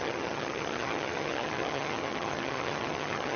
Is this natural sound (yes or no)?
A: no